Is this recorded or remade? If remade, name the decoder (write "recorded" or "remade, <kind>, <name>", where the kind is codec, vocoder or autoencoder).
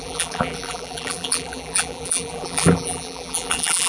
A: remade, vocoder, BigVGAN v2